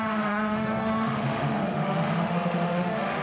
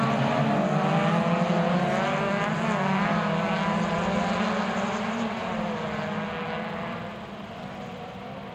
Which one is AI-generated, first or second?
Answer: first